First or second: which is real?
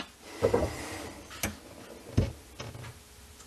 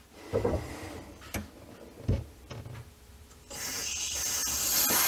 first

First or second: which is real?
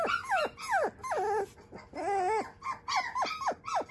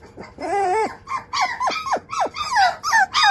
first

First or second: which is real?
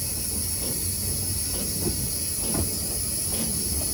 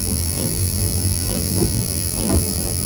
first